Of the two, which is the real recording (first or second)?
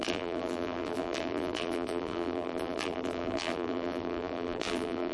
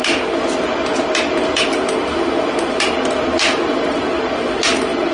second